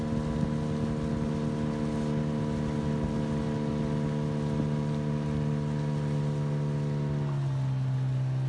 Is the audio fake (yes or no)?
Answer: no